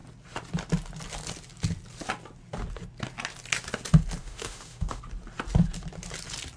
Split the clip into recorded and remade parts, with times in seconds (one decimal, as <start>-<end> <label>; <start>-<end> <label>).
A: 0.0-4.2 recorded; 4.2-5.0 remade; 5.0-6.6 recorded